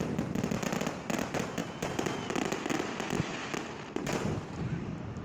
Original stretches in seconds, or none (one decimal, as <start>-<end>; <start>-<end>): 0.0-5.2